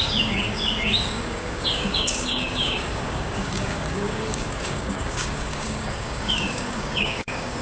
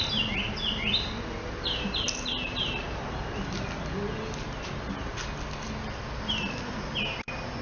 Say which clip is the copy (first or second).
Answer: first